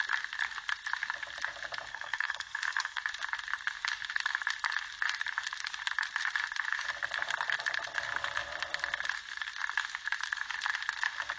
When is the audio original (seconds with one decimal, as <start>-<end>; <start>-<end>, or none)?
0.0-1.9; 3.0-11.4